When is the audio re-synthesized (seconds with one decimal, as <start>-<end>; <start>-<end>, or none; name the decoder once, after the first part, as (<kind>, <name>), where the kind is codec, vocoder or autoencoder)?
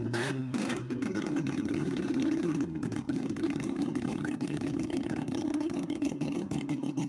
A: 0.0-7.1 (codec, SNAC)